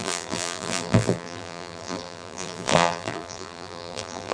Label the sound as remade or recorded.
remade